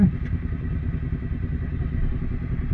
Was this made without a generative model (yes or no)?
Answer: yes